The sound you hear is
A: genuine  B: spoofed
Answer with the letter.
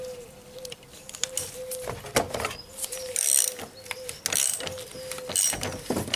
A